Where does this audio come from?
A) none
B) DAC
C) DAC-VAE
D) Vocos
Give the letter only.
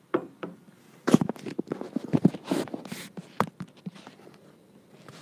A